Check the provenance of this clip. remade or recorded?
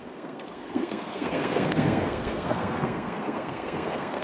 remade